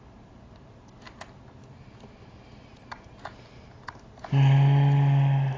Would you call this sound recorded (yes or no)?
yes